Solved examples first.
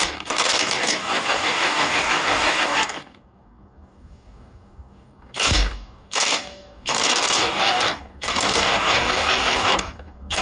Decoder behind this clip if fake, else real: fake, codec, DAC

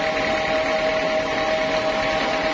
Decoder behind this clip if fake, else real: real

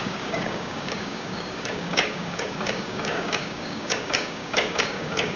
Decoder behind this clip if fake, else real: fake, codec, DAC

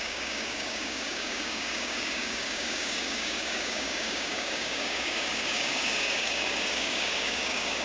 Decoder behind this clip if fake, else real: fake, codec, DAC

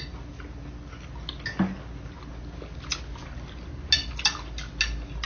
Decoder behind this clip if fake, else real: real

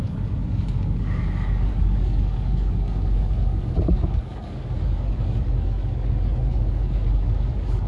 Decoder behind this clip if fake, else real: fake, codec, DAC